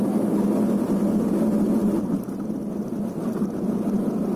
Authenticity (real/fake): real